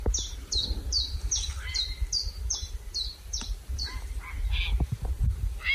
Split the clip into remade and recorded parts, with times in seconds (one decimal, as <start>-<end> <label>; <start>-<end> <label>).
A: 0.0-0.6 recorded; 0.6-3.6 remade; 3.6-5.7 recorded